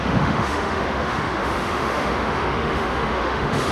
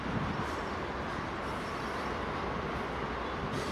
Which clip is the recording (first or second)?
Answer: second